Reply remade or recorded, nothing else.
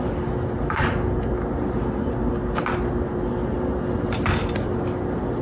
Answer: recorded